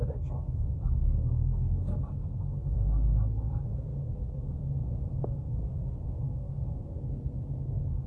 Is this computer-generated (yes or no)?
yes